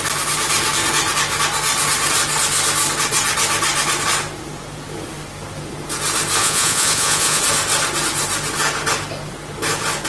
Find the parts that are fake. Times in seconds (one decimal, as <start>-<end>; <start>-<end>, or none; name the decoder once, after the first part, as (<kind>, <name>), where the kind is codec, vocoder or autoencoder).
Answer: 6.4-7.4 (vocoder, Vocos)